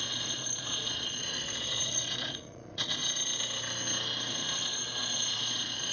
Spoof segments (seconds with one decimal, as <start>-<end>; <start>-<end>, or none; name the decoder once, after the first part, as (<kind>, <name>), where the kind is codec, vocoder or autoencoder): 0.0-3.0 (vocoder, Vocos); 4.3-5.9